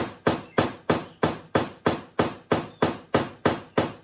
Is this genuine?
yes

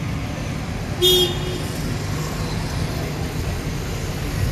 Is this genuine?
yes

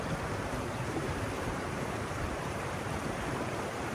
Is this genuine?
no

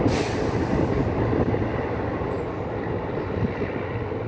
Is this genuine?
yes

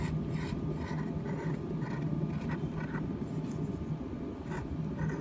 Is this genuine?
yes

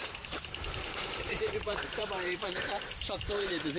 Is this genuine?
no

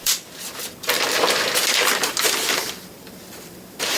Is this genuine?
no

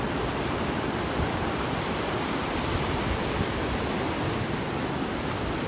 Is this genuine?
no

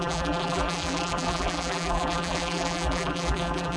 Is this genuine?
no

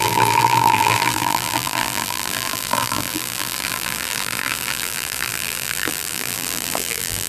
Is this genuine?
no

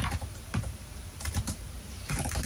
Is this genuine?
no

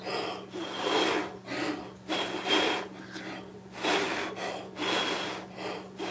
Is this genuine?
yes